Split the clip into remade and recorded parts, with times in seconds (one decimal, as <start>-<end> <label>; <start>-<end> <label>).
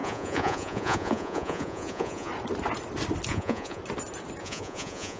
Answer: 0.0-2.3 remade; 2.3-3.3 recorded; 3.3-3.8 remade; 3.8-4.4 recorded; 4.4-5.2 remade